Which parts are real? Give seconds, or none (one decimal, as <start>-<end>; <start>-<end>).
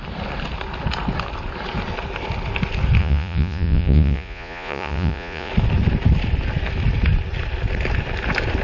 0.0-3.0; 5.5-8.6